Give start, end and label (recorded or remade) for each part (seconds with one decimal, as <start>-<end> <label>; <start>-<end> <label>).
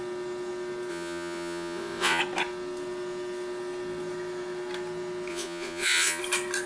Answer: 0.0-0.9 recorded; 0.9-2.2 remade; 2.2-5.3 recorded; 5.3-6.2 remade; 6.2-6.7 recorded